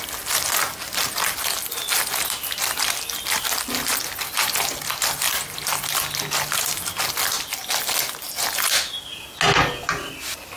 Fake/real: real